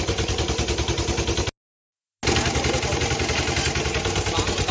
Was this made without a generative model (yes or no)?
yes